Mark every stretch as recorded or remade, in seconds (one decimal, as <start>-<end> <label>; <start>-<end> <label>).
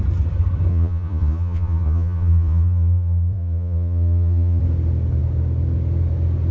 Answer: 0.0-0.7 recorded; 0.7-4.6 remade; 4.6-6.5 recorded